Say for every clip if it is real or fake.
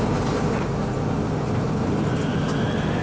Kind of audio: real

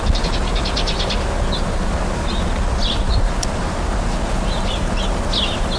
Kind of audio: real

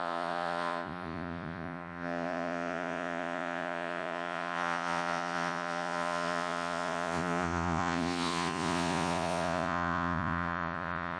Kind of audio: fake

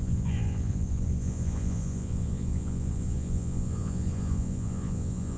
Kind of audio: fake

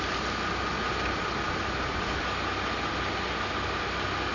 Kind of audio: real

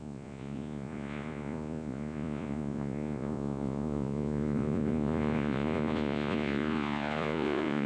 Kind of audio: fake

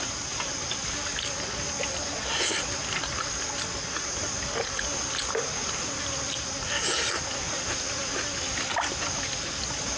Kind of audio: real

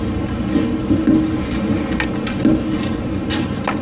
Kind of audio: real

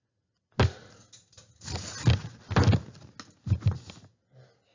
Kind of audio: real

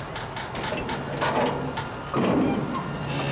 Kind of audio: real